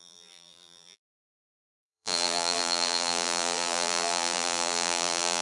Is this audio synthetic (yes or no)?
yes